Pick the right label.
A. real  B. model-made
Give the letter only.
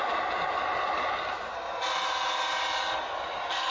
A